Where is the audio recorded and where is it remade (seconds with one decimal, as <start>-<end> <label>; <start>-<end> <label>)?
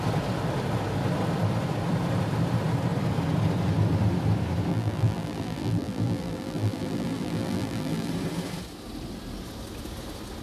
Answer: 0.0-4.7 recorded; 4.7-8.1 remade; 8.1-10.4 recorded